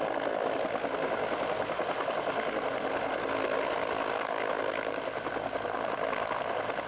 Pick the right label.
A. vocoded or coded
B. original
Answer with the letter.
B